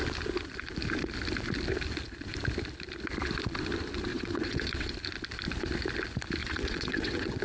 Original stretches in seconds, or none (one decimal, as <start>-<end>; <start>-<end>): 0.0-4.1; 4.9-6.4